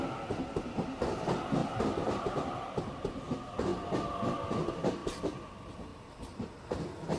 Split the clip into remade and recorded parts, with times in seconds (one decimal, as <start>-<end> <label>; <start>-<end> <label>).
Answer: 0.0-1.6 recorded; 1.6-2.9 remade; 2.9-5.0 recorded; 5.0-5.5 remade; 5.5-5.9 recorded; 5.9-6.5 remade; 6.5-7.2 recorded